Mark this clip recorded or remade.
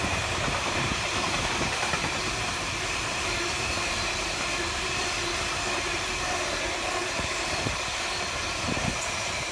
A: remade